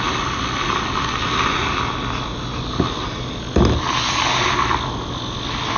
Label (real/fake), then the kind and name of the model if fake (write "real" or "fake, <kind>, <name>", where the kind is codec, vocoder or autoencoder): real